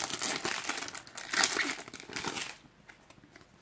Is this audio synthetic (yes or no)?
no